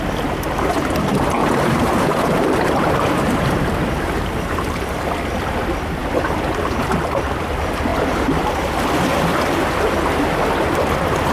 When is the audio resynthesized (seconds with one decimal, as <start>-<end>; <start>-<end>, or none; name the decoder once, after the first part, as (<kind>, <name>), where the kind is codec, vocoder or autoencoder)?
1.4-5.1 (vocoder, BigVGAN v2); 7.9-8.5